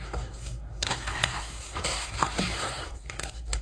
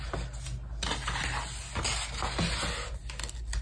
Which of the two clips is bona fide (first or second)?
second